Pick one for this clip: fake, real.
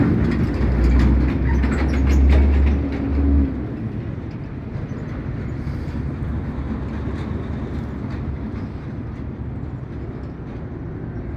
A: real